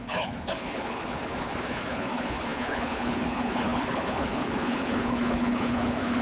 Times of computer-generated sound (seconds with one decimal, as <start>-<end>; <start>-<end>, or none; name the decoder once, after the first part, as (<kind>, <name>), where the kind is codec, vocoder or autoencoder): 0.0-6.2 (codec, HILCodec)

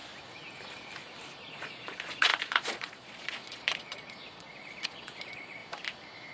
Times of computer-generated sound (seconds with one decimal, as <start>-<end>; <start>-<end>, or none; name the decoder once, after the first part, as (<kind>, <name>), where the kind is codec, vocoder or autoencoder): 1.5-5.6 (vocoder, Vocos)

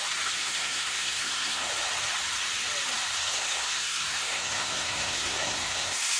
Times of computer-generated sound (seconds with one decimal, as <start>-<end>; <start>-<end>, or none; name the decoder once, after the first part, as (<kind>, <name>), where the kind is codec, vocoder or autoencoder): 0.4-1.7 (codec, SNAC); 3.1-6.2

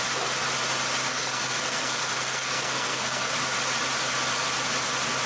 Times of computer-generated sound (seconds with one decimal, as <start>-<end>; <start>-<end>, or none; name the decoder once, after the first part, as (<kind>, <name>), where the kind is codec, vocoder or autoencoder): 1.1-3.3 (codec, SNAC)